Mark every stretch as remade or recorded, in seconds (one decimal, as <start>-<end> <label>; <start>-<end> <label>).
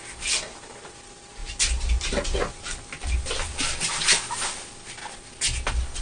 0.0-6.0 recorded